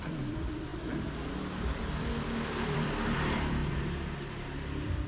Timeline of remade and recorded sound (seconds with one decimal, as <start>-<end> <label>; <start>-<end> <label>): 0.0-0.7 remade; 0.7-1.3 recorded; 1.3-3.6 remade; 3.6-4.3 recorded; 4.3-5.1 remade